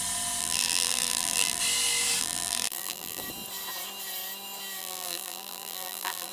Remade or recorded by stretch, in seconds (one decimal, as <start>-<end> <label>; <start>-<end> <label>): 0.0-0.4 recorded; 0.4-1.6 remade; 1.6-2.2 recorded; 2.2-3.2 remade; 3.2-4.8 recorded; 4.8-6.3 remade